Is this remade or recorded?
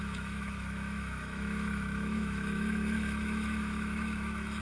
remade